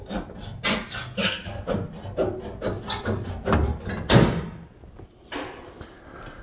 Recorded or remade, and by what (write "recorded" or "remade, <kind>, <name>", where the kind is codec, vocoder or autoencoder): recorded